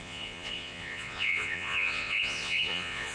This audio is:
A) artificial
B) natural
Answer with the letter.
A